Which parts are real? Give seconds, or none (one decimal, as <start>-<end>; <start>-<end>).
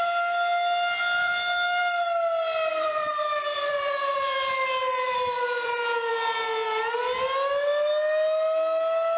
0.0-1.2; 1.8-2.7; 6.1-9.2